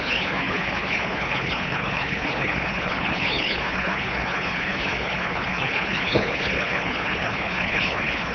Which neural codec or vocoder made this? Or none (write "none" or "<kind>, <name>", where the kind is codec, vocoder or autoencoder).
codec, HILCodec